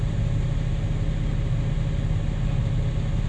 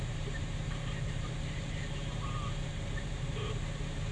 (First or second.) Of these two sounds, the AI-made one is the second